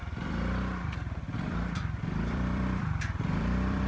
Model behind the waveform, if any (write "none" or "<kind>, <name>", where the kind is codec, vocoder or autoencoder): vocoder, BigVGAN v2